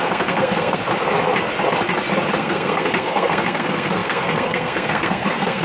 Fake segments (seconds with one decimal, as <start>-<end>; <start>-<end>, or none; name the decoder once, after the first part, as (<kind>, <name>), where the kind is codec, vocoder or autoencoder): 0.0-0.8 (codec, SNAC); 2.4-5.6